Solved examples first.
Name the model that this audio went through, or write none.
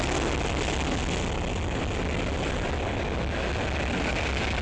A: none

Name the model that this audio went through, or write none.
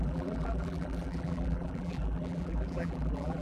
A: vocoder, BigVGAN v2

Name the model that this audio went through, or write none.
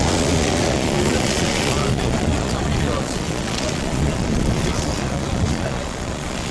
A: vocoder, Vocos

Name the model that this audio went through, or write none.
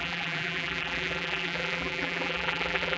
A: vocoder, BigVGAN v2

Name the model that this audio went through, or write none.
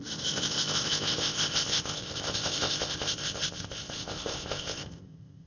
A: codec, ZipCodec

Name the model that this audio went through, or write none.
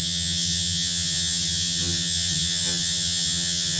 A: vocoder, HiFi-GAN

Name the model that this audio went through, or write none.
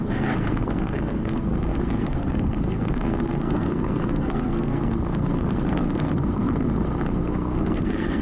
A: codec, SNAC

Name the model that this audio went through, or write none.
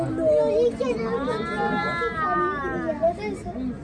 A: none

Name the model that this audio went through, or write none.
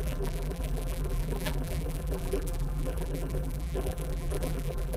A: vocoder, BigVGAN v2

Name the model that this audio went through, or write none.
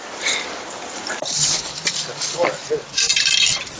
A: none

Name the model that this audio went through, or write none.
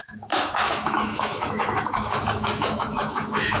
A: autoencoder, DAC-VAE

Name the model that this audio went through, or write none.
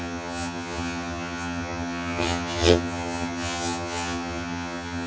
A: vocoder, HiFi-GAN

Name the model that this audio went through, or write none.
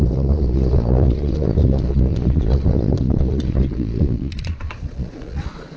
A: vocoder, Vocos